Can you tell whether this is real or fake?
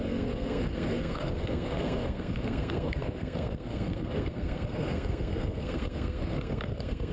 fake